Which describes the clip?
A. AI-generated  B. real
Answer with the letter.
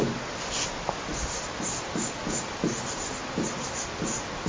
B